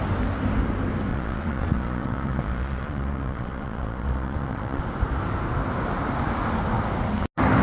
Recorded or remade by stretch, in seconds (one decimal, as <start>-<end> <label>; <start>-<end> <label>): 0.0-1.1 recorded; 1.1-4.8 remade; 4.8-7.6 recorded